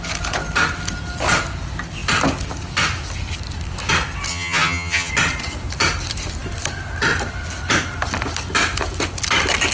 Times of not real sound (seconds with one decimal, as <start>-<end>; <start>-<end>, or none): 4.3-5.1